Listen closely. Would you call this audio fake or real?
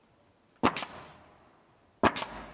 real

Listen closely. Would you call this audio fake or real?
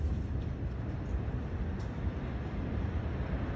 real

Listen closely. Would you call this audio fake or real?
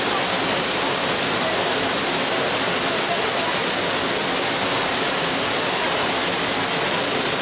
real